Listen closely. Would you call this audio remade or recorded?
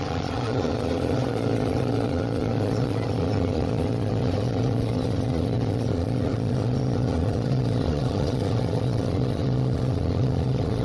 remade